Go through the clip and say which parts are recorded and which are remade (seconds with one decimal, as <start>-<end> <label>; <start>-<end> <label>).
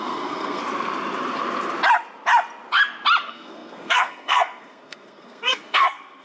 0.0-0.6 remade; 0.6-3.2 recorded; 3.2-6.2 remade